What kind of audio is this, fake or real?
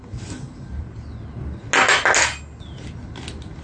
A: real